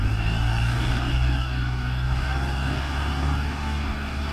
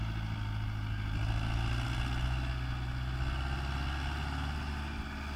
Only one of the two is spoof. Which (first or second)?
first